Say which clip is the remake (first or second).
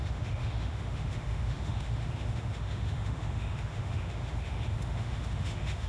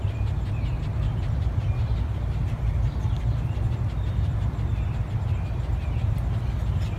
first